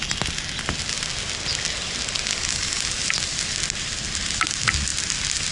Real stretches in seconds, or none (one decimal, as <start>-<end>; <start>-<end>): 0.0-2.3; 2.8-5.5